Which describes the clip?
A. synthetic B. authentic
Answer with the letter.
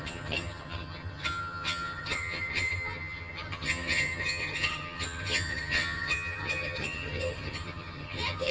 A